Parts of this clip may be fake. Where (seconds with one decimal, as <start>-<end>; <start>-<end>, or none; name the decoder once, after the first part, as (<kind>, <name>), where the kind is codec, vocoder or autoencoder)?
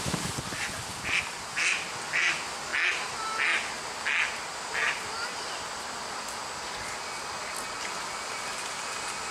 0.0-2.7 (vocoder, BigVGAN v2); 5.2-6.4; 8.0-9.3